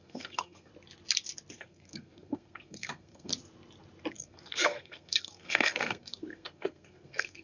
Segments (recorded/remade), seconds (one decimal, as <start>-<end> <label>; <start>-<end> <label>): 0.0-0.7 remade; 0.7-1.5 recorded; 1.5-3.3 remade; 3.3-4.1 recorded; 4.1-7.4 remade